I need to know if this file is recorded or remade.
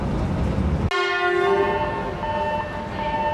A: recorded